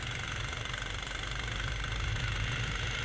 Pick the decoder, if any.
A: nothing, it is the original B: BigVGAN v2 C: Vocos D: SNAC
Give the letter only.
B